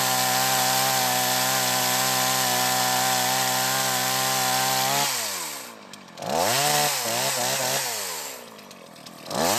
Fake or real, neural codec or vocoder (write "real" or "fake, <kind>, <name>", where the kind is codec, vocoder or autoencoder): real